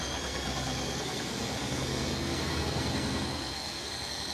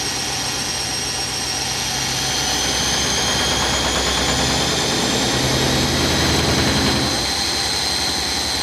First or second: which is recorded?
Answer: second